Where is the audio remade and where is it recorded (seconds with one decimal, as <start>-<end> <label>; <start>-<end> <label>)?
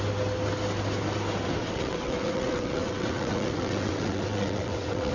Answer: 0.0-1.6 recorded; 1.6-5.1 remade